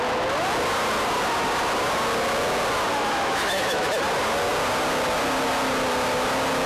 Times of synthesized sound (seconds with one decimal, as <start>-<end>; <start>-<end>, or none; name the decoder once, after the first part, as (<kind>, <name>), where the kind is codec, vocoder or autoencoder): 2.9-4.0 (autoencoder, DAC-VAE)